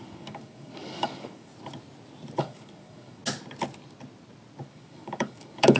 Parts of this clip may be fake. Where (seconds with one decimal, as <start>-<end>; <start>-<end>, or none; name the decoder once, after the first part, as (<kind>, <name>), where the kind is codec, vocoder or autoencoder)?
0.0-1.5 (codec, DAC); 2.4-3.2; 4.7-5.8